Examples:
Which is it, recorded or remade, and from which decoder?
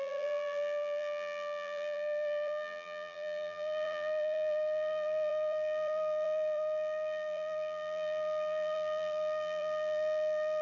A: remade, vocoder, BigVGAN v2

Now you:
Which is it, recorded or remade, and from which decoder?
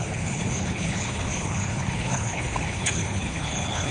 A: remade, codec, HILCodec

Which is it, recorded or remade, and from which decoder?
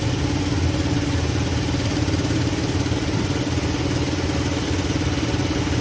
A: recorded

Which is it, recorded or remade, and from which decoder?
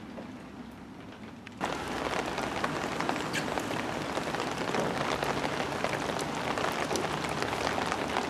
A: recorded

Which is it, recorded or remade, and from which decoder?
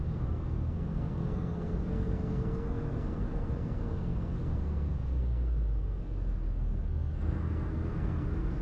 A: remade, codec, SNAC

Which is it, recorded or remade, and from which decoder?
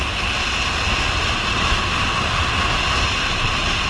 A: recorded